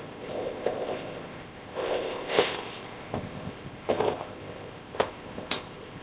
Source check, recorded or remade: remade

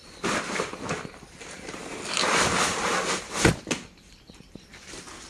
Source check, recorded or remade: remade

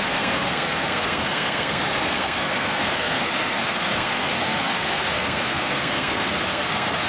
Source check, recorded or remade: remade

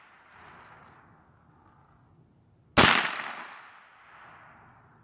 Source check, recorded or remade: recorded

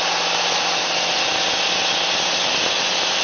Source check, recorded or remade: recorded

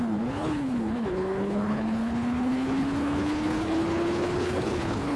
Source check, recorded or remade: remade